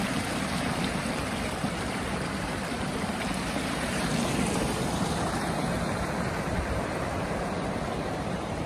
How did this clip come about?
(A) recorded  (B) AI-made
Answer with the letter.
B